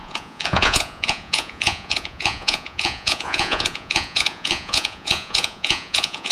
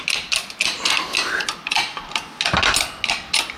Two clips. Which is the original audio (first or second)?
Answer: second